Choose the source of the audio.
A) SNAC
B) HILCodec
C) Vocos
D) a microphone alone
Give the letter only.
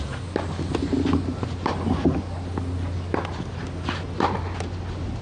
D